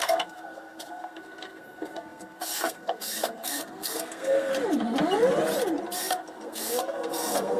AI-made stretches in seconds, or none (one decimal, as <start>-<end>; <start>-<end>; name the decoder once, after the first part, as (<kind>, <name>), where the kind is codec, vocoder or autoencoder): 0.0-4.5 (codec, SNAC); 6.1-7.6

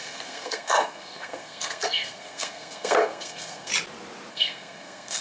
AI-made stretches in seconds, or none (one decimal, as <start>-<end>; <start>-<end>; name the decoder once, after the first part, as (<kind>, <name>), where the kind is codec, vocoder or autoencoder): 0.0-3.7 (codec, SNAC); 4.3-5.2

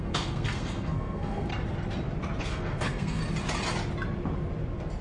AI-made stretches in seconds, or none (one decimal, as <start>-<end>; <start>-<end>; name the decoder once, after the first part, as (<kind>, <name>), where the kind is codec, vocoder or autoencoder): 0.0-1.5 (codec, SNAC); 2.4-3.2

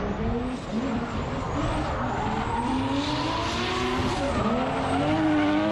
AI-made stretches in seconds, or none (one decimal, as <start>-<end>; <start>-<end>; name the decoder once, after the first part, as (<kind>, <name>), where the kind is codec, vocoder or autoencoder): none

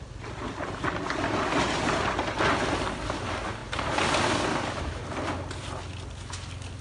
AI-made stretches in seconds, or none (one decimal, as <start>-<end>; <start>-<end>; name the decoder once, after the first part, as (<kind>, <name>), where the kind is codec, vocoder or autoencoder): none